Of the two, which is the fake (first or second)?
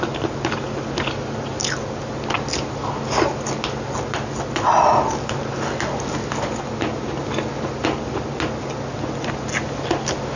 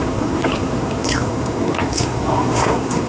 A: second